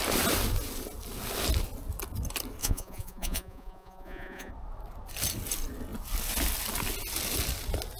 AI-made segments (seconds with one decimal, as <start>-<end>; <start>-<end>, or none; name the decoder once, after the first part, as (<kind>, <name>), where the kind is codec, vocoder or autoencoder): 2.6-4.5 (vocoder, Vocos)